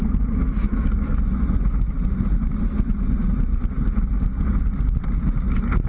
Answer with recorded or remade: recorded